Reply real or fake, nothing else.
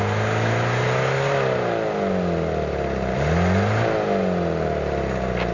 real